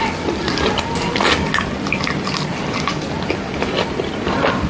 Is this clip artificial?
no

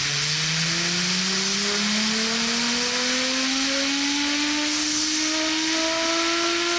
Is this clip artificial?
no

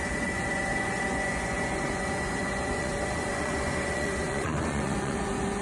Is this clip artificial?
yes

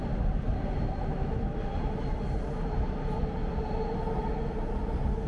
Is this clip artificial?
no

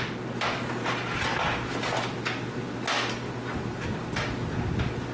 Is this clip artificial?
no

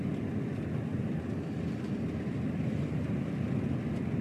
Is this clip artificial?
no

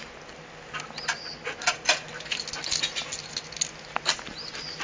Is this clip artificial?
no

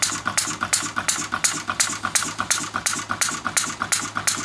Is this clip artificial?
no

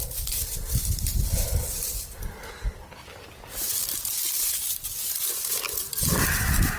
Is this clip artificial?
no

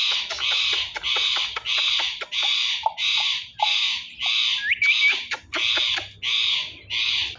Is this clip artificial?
no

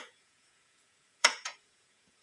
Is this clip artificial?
yes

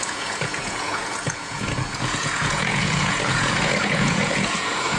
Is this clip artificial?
yes